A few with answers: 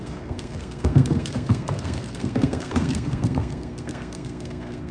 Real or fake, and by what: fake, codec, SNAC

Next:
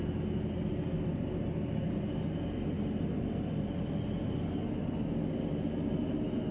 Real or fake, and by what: real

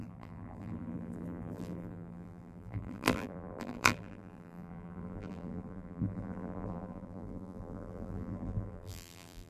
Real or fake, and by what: fake, vocoder, BigVGAN v2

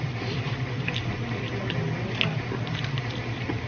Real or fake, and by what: real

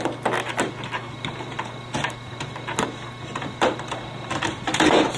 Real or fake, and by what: real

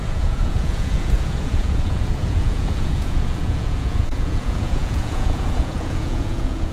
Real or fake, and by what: fake, vocoder, Vocos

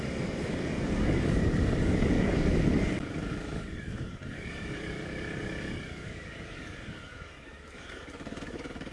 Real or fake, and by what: fake, codec, DAC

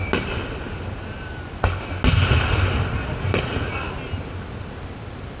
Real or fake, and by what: real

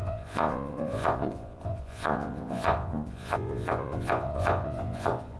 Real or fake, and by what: fake, vocoder, Vocos